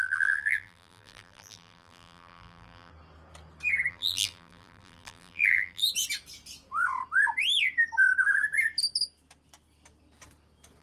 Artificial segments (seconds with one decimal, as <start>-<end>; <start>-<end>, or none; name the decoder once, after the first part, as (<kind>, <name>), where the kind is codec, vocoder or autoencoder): 0.0-2.9 (vocoder, BigVGAN v2); 3.9-5.8